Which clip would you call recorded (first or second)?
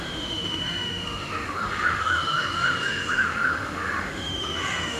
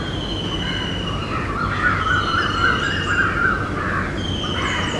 second